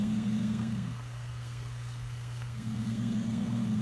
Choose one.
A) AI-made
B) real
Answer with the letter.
A